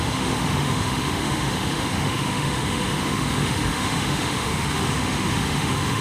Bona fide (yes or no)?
no